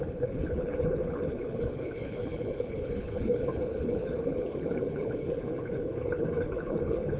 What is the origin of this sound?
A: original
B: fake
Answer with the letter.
B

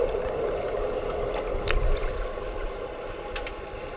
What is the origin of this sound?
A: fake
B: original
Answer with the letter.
B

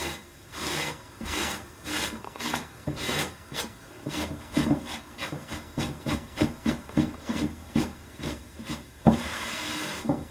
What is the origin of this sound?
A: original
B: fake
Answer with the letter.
B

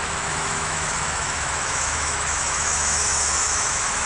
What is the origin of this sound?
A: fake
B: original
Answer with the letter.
A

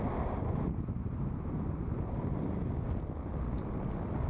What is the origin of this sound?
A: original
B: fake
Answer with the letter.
A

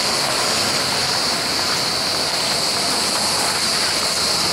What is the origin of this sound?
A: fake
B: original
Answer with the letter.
B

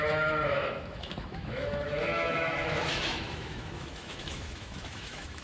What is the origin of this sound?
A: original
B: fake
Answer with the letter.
B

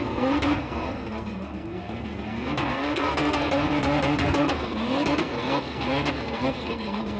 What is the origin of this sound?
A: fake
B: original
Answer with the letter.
A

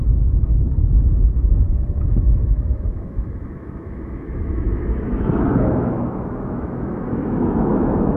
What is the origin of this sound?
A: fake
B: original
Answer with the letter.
A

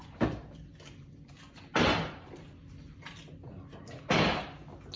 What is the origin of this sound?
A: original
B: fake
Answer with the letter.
A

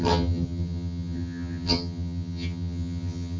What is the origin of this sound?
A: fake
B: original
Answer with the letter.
A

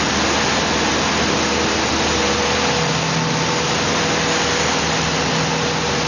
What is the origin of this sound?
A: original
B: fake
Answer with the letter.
A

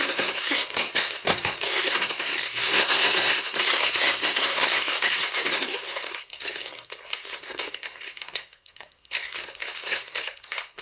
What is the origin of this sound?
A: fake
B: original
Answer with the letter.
A